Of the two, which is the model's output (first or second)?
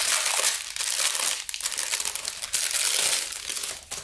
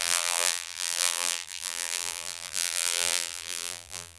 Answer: second